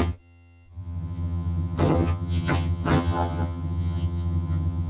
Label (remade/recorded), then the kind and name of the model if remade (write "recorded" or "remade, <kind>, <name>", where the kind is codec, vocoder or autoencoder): remade, vocoder, HiFi-GAN